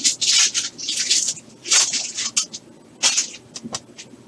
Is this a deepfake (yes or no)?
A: no